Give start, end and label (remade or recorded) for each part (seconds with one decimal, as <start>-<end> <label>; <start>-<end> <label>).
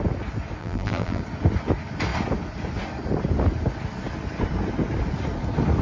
0.0-0.6 recorded; 0.6-1.2 remade; 1.2-5.8 recorded